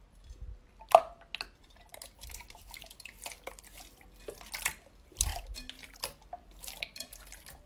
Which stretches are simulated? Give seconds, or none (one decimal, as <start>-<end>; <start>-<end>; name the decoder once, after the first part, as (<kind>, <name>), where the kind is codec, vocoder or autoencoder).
none

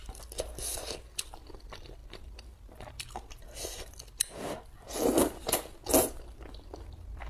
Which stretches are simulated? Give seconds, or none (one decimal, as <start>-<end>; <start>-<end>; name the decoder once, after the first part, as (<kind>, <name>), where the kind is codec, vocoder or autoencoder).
none

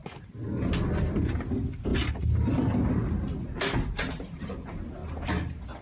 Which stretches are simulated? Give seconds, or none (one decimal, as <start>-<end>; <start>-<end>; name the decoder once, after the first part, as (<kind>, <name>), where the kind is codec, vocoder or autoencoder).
1.1-1.9 (vocoder, BigVGAN v2); 4.1-5.0

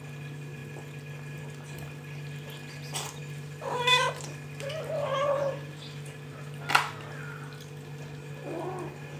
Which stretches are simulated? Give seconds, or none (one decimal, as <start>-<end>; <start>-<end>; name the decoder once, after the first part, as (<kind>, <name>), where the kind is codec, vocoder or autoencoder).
0.0-0.6 (vocoder, BigVGAN v2); 1.4-3.2; 4.7-9.2